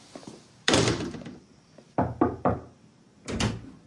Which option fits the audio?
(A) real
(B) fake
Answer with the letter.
B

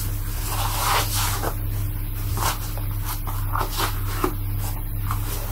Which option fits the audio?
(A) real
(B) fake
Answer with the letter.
A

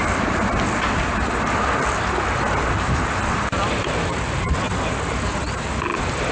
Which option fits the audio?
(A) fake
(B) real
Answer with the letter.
B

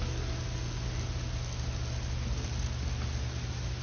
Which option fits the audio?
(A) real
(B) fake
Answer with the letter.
A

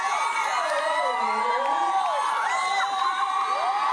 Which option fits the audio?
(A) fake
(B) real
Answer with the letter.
B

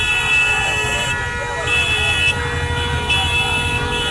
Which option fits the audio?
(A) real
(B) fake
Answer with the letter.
A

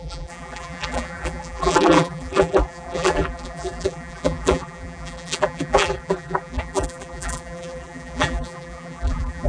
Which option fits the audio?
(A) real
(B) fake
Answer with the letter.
B